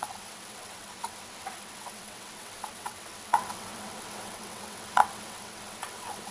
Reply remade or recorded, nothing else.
remade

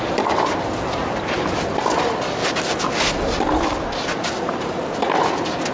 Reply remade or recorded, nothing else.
recorded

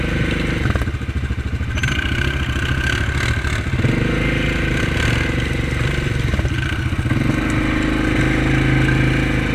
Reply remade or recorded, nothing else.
recorded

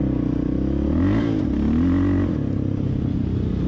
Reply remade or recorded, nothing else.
recorded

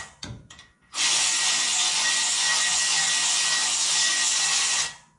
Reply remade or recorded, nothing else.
remade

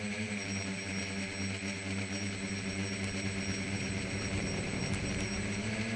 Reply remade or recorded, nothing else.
remade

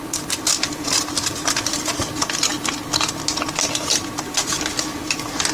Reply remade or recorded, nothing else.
recorded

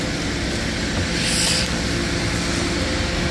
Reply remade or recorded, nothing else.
recorded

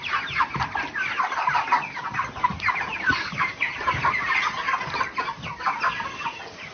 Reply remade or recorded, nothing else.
recorded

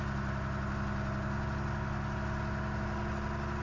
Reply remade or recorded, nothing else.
recorded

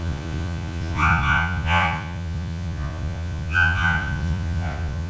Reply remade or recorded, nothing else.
remade